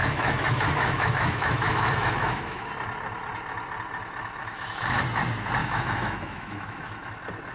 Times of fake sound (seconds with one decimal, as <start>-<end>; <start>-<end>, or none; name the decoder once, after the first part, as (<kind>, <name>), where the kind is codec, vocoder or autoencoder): 0.0-2.7 (autoencoder, DAC-VAE); 4.4-5.0; 5.6-7.1